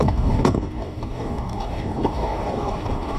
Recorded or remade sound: remade